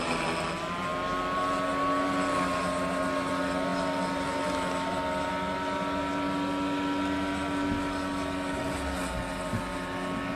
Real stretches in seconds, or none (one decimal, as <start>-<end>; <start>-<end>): 0.0-10.4

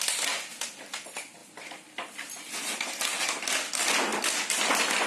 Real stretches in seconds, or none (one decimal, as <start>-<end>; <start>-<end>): 0.0-1.4; 2.3-5.1